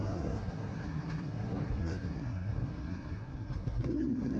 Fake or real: fake